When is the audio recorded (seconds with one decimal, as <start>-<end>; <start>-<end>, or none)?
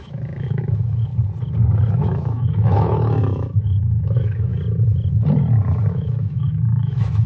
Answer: 1.1-1.9; 4.5-5.9